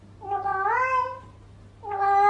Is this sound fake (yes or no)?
no